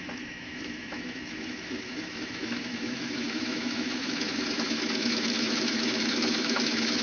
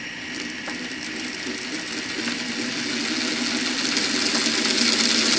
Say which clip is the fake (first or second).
first